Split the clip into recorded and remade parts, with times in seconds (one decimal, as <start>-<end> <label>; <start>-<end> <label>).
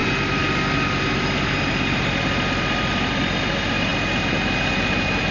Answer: 0.0-5.3 recorded